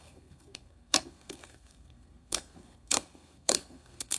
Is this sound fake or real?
fake